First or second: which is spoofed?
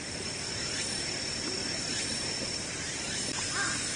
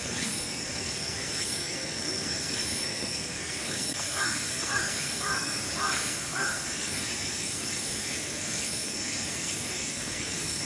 second